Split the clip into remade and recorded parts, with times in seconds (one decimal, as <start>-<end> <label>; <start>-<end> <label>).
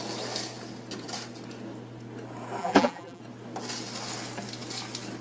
0.0-2.6 recorded; 2.6-3.2 remade; 3.2-5.2 recorded